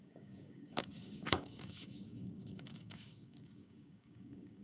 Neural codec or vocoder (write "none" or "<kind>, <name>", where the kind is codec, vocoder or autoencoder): codec, DAC